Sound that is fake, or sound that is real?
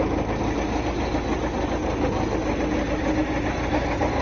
real